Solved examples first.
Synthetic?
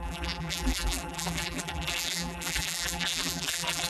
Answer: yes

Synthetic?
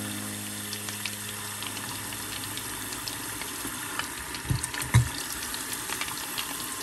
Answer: no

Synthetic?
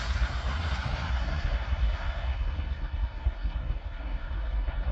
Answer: yes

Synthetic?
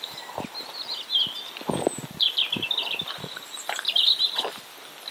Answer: no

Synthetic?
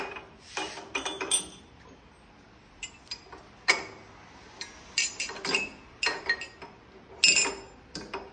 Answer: no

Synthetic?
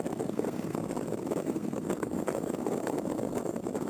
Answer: yes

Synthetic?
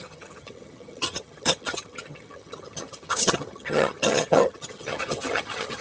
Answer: yes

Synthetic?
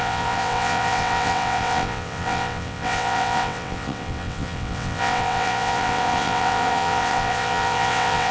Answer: yes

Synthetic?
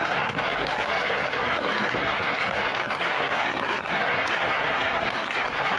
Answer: yes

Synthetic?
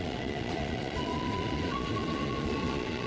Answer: yes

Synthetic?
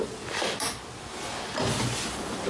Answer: no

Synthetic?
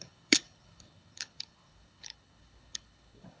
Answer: yes